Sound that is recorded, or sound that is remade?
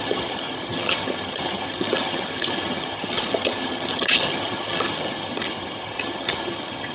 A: remade